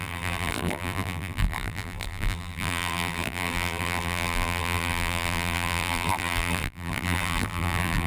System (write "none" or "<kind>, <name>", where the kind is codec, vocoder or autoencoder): vocoder, BigVGAN v2